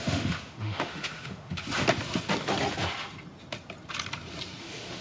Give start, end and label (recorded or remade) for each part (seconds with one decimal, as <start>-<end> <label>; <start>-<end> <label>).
0.0-1.6 remade; 1.6-4.6 recorded; 4.6-5.0 remade